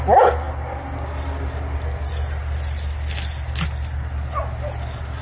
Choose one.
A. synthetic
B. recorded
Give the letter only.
B